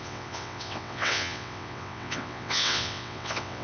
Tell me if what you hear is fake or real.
fake